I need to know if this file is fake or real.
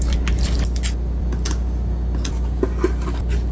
real